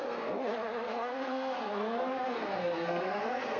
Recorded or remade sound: remade